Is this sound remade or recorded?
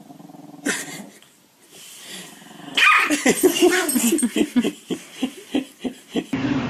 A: remade